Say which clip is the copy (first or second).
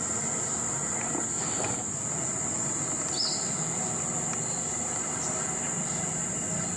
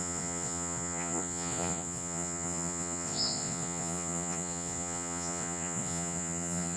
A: second